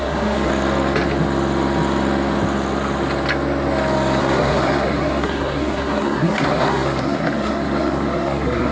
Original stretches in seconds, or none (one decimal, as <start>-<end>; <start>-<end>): 0.5-4.2